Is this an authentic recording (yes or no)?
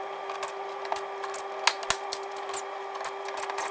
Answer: yes